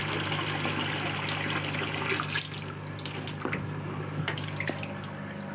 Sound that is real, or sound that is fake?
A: real